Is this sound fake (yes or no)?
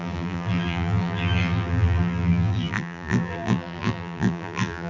yes